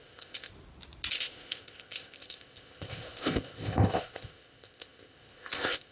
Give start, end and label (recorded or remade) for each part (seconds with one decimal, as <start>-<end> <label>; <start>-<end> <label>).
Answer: 0.0-0.5 remade; 0.5-1.1 recorded; 1.1-5.9 remade